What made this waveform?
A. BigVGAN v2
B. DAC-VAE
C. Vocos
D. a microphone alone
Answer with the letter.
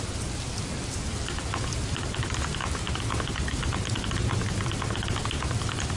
D